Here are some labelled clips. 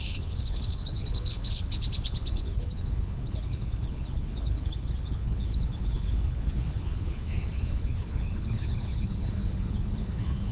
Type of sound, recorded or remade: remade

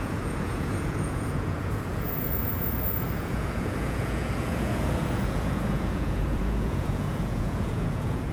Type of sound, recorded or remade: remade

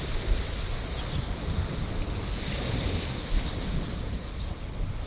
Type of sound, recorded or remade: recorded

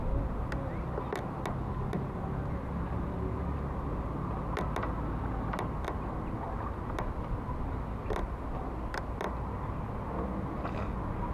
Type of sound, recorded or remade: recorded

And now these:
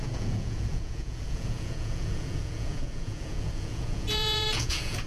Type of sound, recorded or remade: remade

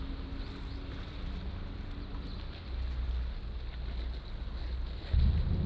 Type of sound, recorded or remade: recorded